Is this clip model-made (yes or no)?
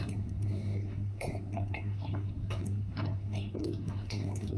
yes